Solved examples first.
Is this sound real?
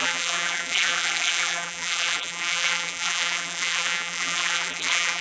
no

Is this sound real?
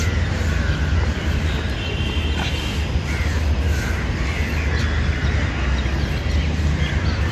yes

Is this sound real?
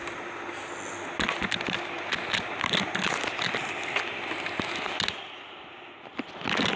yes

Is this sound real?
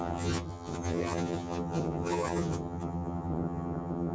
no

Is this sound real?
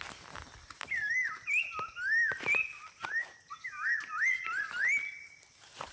yes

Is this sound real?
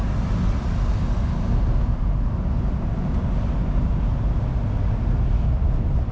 yes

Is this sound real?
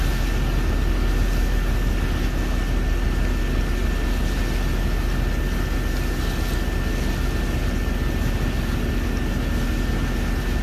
yes